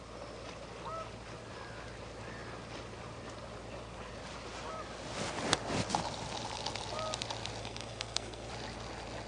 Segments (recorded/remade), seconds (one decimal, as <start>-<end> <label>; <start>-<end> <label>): 0.0-7.6 recorded; 7.6-8.5 remade; 8.5-9.3 recorded